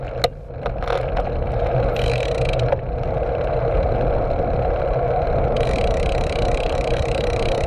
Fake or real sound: real